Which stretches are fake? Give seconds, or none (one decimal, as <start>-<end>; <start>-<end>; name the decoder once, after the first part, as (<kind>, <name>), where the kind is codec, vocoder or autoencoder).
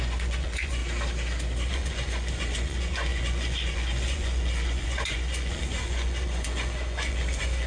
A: 0.0-0.8 (vocoder, Vocos); 1.7-7.7